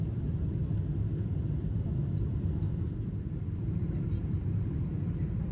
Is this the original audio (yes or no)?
no